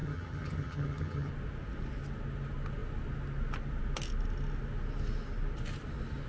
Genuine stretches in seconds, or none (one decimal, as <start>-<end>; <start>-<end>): 1.3-6.3